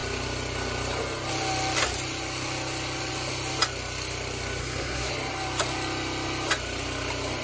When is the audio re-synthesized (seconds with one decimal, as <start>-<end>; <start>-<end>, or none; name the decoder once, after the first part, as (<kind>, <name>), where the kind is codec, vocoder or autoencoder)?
4.6-5.1 (codec, SNAC)